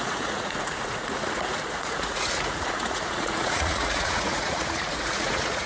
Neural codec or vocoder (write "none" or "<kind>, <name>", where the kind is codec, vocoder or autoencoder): vocoder, Vocos